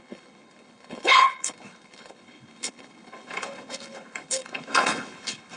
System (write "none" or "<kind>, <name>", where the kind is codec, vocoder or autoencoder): codec, HILCodec